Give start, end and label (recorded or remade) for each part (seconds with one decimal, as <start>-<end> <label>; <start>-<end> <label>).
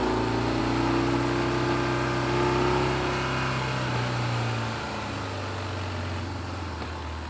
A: 0.0-7.3 recorded